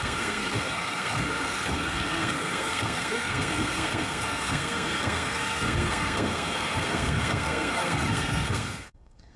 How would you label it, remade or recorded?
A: remade